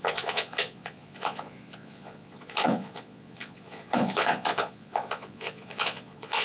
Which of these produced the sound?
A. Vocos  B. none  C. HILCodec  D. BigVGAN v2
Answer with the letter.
A